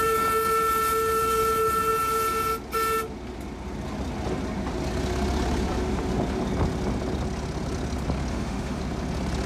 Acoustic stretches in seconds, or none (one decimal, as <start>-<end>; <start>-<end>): 0.0-8.3; 8.8-9.5